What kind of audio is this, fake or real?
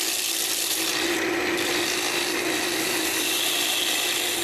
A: real